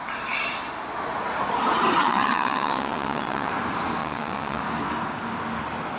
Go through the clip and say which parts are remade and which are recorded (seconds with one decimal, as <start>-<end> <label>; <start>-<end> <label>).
0.0-2.0 recorded; 2.0-3.5 remade; 3.5-4.0 recorded; 4.0-4.6 remade; 4.6-6.0 recorded